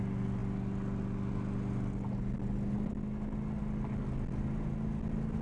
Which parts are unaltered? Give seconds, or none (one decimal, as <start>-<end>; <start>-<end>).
0.0-5.4